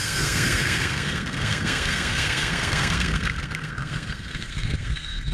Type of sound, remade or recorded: remade